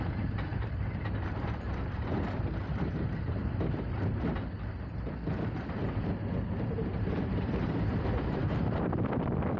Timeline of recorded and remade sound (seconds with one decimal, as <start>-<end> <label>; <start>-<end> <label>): 0.0-0.5 recorded; 0.5-2.9 remade; 2.9-6.9 recorded; 6.9-9.0 remade; 9.0-9.6 recorded